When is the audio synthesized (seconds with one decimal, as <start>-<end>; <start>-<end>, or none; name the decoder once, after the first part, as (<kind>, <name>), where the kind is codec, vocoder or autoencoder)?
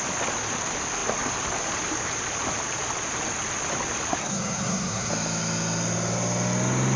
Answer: 4.2-5.1 (codec, SNAC)